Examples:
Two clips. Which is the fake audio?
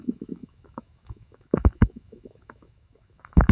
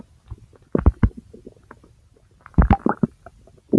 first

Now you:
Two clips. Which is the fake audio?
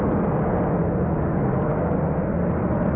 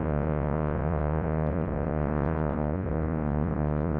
second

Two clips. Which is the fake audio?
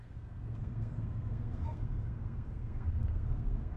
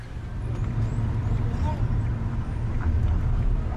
first